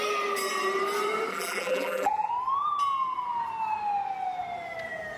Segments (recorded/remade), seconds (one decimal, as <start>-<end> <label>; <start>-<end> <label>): 0.0-1.3 recorded; 1.3-2.3 remade; 2.3-5.2 recorded